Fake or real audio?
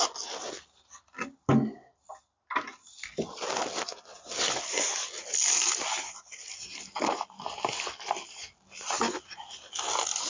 real